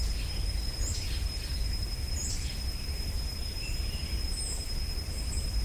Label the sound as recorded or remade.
remade